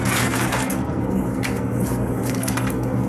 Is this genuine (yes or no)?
no